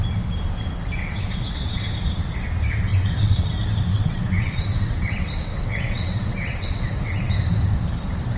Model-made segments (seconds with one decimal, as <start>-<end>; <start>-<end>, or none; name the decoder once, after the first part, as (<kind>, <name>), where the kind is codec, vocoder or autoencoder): 1.0-1.8 (vocoder, WaveNeXt); 2.9-3.5; 3.9-7.3